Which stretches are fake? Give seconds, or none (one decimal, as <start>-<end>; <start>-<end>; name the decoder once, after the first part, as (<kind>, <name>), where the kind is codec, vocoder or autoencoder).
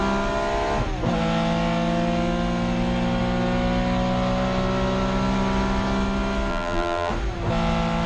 6.5-7.1 (vocoder, BigVGAN v2)